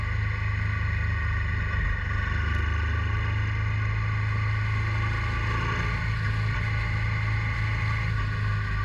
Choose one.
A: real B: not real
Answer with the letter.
A